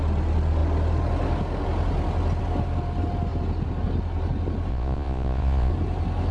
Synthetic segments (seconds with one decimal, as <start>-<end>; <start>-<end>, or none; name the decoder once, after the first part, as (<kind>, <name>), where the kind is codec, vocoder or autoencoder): 4.7-5.7 (vocoder, Vocos)